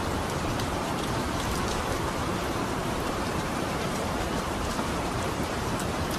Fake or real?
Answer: fake